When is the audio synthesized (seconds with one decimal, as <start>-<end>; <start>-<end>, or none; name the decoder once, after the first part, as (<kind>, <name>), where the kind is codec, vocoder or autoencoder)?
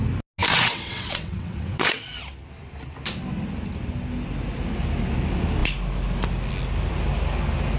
0.5-2.2 (vocoder, WaveNeXt)